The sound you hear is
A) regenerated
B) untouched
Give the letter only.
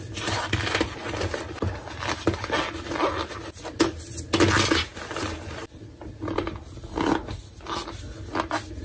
B